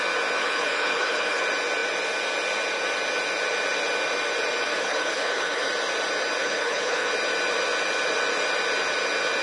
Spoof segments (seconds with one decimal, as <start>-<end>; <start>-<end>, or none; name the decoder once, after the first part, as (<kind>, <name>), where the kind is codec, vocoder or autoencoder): 0.4-1.4 (codec, HILCodec); 4.7-5.7; 6.4-7.1